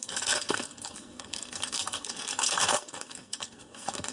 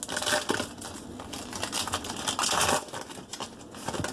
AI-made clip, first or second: first